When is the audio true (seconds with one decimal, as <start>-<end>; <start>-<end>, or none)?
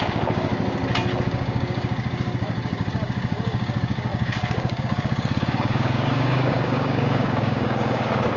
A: 0.5-1.2